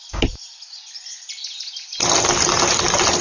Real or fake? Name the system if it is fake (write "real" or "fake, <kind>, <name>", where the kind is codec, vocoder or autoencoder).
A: real